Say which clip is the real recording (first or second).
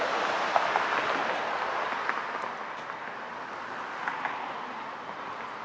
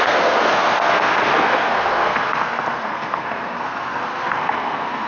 first